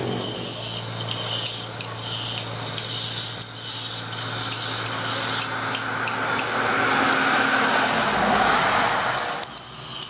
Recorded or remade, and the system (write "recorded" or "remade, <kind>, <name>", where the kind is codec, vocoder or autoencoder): recorded